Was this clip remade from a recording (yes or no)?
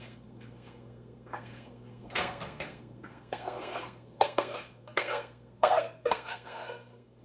yes